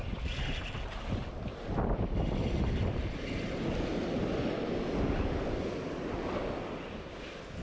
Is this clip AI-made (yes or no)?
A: no